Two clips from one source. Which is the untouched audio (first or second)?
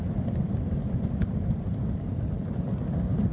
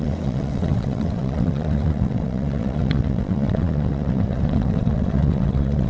first